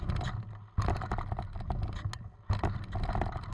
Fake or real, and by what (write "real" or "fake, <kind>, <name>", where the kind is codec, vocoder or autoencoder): real